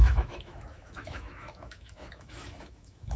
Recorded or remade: remade